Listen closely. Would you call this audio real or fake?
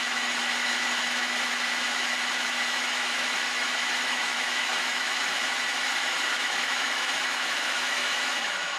fake